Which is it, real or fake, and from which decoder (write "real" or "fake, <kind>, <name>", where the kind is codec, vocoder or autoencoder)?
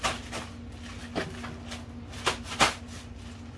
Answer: real